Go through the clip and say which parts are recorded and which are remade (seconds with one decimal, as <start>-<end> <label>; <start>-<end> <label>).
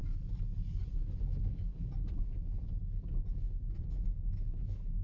0.0-1.2 recorded; 1.2-1.7 remade; 1.7-3.9 recorded; 3.9-5.0 remade